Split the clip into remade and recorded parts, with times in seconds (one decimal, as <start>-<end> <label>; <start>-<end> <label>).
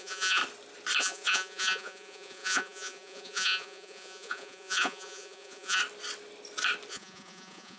0.0-0.4 remade; 0.4-1.0 recorded; 1.0-5.8 remade; 5.8-6.9 recorded; 6.9-7.8 remade